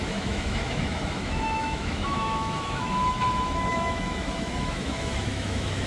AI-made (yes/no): yes